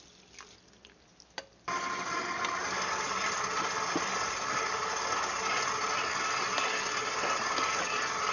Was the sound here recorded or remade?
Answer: recorded